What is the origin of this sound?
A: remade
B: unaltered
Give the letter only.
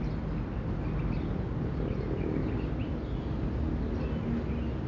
B